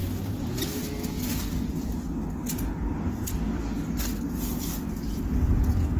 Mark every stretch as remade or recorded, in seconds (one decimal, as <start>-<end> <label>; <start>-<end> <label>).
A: 0.0-6.0 recorded